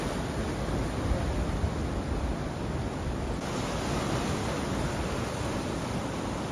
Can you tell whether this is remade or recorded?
recorded